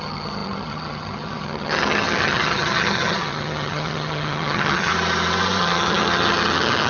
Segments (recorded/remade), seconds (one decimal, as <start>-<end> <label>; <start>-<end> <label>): 0.0-4.9 remade; 4.9-5.6 recorded; 5.6-6.9 remade